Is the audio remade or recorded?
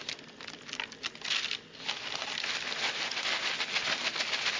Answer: recorded